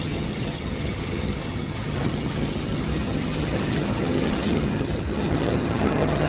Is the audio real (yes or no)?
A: no